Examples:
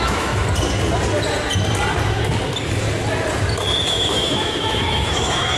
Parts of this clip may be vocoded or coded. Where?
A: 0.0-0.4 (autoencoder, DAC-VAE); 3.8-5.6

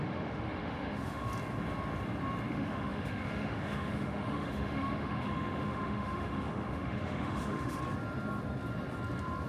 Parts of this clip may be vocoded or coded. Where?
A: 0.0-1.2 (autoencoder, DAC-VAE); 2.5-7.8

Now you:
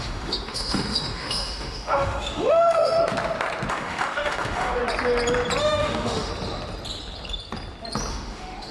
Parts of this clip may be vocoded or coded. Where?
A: 0.0-3.0 (autoencoder, DAC-VAE); 3.7-4.8; 5.6-6.3; 8.1-8.7